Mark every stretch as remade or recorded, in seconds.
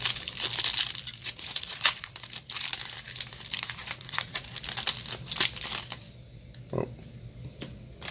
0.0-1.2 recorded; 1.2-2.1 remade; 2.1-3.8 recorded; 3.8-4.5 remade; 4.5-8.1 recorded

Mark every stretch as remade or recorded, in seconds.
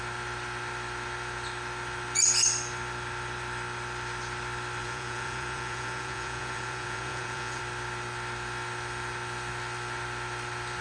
0.0-4.8 recorded; 4.8-7.6 remade; 7.6-10.8 recorded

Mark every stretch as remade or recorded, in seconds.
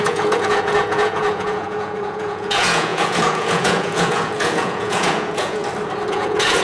0.0-5.6 remade; 5.6-6.1 recorded; 6.1-6.6 remade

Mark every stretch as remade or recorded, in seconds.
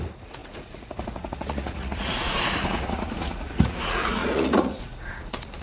0.0-5.6 remade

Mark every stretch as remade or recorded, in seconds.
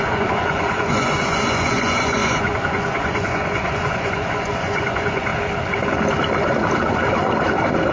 0.0-5.3 remade; 5.3-7.9 recorded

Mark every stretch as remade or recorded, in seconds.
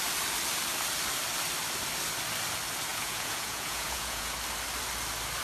0.0-2.9 recorded; 2.9-4.3 remade; 4.3-5.4 recorded